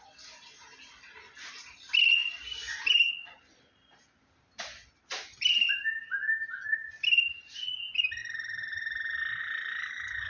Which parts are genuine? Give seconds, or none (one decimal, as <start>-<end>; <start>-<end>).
0.0-0.9; 5.7-8.2; 9.4-10.3